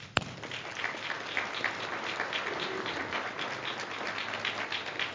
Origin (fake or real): real